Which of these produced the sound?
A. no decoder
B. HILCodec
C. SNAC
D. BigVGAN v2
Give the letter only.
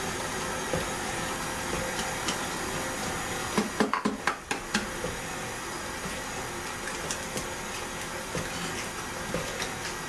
A